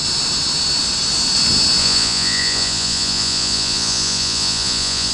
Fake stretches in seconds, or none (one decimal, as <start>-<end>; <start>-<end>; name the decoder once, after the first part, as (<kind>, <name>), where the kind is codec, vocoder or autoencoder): 1.8-5.1 (vocoder, Vocos)